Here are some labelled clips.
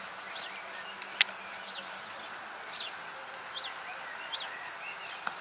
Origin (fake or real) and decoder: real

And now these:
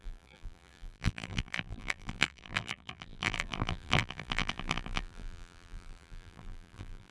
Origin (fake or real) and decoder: fake, vocoder, BigVGAN v2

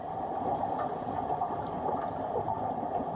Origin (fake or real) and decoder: real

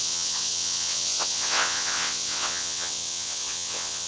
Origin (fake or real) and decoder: fake, vocoder, WaveNeXt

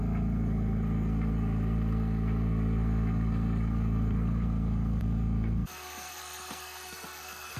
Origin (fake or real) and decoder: fake, codec, SNAC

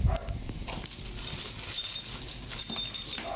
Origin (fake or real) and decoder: fake, vocoder, BigVGAN v2